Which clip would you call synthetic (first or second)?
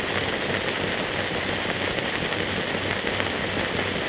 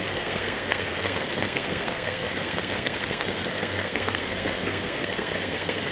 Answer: second